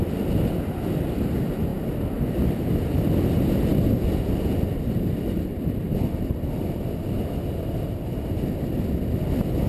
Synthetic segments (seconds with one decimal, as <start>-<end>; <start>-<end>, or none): none